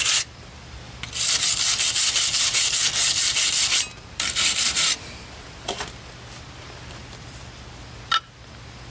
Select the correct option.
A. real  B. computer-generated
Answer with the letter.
A